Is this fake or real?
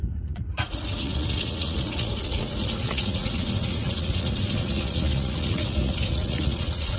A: fake